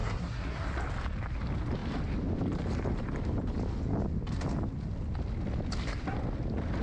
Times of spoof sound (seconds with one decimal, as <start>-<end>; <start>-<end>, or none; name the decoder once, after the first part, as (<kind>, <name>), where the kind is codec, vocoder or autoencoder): 0.0-0.7 (codec, SNAC)